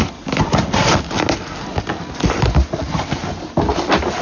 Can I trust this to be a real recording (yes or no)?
yes